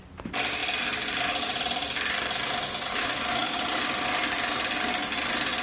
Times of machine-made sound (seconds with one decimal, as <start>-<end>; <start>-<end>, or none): 2.9-3.6